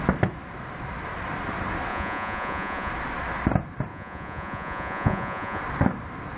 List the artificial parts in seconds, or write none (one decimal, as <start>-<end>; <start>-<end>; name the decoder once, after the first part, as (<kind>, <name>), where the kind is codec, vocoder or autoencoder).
1.9-2.9 (vocoder, Vocos); 3.9-5.6